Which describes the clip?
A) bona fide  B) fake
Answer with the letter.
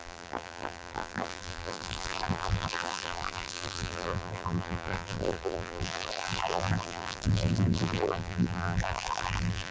B